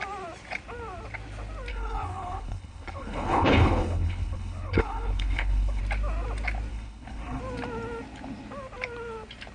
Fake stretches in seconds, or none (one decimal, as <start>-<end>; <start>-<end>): 1.7-5.8; 6.7-7.4